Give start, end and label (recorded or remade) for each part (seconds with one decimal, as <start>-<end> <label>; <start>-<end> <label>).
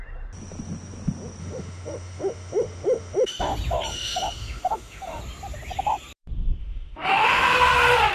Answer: 0.0-1.4 recorded; 1.4-3.3 remade; 3.3-3.9 recorded; 3.9-5.2 remade; 5.2-6.6 recorded; 6.6-7.6 remade; 7.6-8.1 recorded